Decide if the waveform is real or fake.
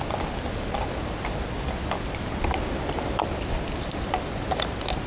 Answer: real